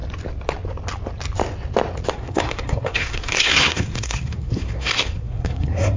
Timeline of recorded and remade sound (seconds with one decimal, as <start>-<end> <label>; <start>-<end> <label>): 0.0-2.1 recorded; 2.1-6.0 remade